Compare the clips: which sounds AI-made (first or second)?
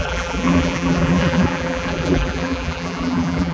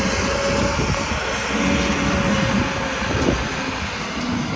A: first